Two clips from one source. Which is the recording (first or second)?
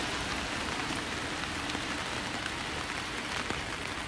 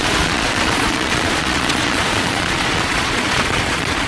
first